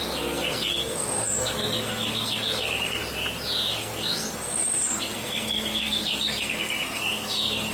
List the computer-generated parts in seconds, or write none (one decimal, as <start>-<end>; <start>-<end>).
0.0-3.0; 3.7-7.7